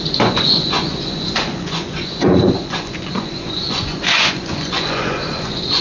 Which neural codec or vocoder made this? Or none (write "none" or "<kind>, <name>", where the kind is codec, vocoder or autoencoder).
vocoder, Vocos